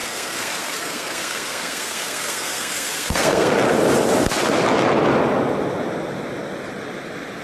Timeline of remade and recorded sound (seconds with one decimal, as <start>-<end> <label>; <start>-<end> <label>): 0.0-3.5 remade; 3.5-7.4 recorded